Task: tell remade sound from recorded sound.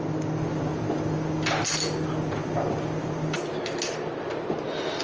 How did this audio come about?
recorded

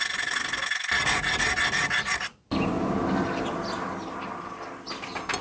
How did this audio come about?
recorded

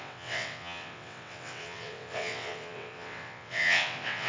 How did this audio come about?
remade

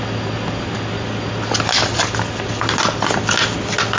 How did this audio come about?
recorded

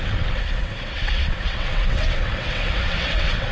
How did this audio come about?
remade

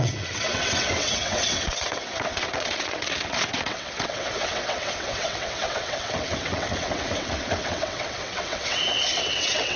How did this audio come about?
remade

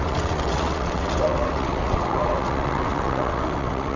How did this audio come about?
remade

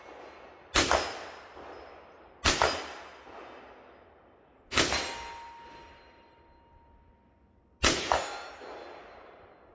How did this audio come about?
recorded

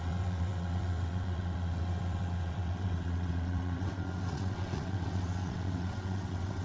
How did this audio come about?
remade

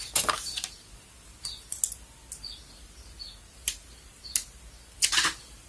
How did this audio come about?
recorded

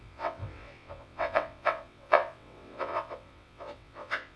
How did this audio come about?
remade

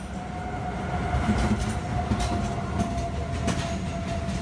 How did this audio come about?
recorded